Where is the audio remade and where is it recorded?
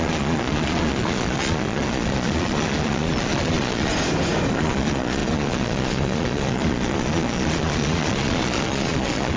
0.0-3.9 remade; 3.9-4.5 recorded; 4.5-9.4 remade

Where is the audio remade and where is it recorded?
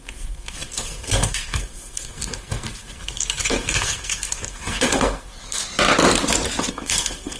0.0-5.6 remade; 5.6-6.7 recorded; 6.7-7.4 remade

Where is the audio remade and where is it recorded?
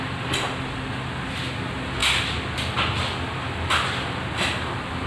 0.0-5.1 recorded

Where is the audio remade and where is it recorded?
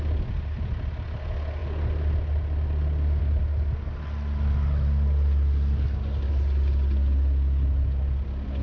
0.0-8.6 recorded